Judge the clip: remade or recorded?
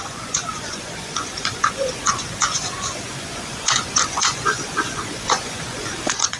remade